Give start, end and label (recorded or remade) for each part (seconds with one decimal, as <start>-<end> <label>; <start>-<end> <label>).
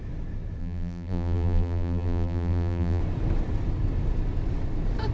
0.0-0.6 recorded; 0.6-3.0 remade; 3.0-5.1 recorded